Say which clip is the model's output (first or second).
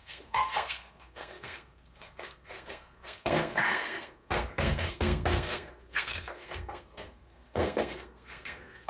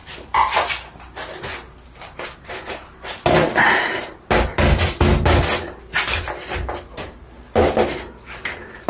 first